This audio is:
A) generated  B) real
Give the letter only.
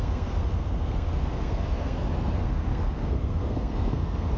A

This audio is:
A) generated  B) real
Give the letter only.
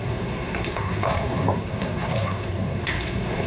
A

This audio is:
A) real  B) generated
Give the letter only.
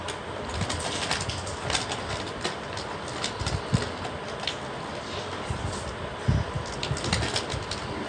A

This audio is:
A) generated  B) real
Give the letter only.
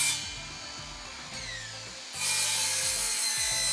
B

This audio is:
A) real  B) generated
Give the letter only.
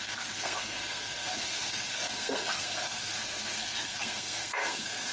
B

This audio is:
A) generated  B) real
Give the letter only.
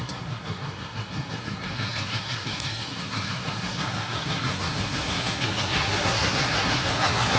A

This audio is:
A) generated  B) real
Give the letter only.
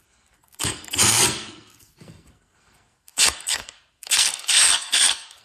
A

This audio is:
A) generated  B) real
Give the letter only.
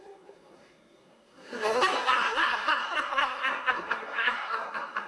A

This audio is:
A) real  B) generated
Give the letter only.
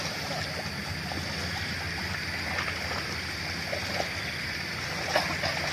A